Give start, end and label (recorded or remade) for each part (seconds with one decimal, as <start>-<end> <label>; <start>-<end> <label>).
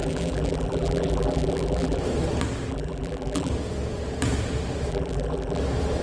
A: 0.0-2.0 remade; 2.0-2.7 recorded; 2.7-3.5 remade; 3.5-4.9 recorded; 4.9-5.6 remade; 5.6-6.0 recorded